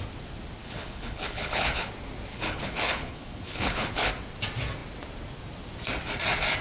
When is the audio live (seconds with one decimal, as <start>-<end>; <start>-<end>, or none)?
0.0-0.6; 1.9-2.3; 4.1-6.6